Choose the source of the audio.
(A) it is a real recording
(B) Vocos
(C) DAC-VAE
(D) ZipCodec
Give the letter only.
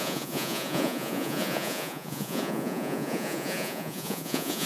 B